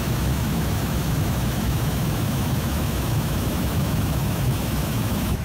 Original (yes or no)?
no